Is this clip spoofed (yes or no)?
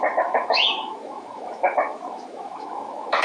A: yes